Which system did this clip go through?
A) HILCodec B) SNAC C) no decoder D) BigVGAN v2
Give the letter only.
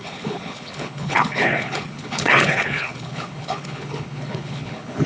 A